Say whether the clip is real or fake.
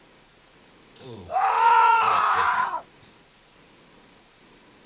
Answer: fake